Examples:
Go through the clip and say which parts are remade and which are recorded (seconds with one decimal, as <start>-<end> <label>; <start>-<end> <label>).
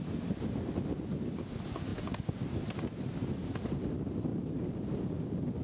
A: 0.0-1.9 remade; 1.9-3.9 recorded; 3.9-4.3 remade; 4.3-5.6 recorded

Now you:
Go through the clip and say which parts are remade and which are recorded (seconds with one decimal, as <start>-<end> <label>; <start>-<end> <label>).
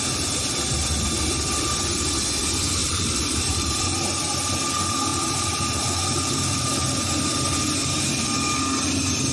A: 0.0-2.8 recorded; 2.8-3.8 remade; 3.8-5.1 recorded; 5.1-7.0 remade; 7.0-7.8 recorded; 7.8-8.3 remade; 8.3-9.3 recorded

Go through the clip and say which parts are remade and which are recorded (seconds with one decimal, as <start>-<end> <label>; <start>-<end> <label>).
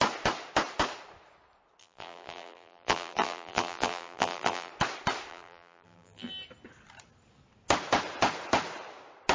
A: 0.0-1.8 recorded; 1.8-4.7 remade; 4.7-5.3 recorded; 5.3-6.3 remade; 6.3-9.3 recorded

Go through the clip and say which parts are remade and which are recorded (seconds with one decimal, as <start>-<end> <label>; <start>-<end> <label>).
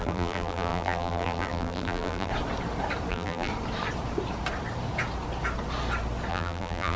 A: 0.0-2.3 remade; 2.3-3.1 recorded; 3.1-3.5 remade; 3.5-6.3 recorded; 6.3-7.0 remade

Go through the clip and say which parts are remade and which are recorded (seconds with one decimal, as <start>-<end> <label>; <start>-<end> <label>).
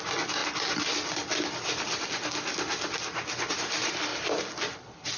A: 0.0-0.4 remade; 0.4-3.5 recorded; 3.5-4.1 remade; 4.1-4.7 recorded; 4.7-5.2 remade